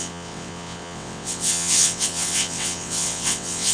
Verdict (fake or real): fake